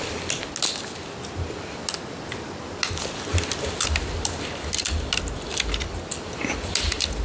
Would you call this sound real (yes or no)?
yes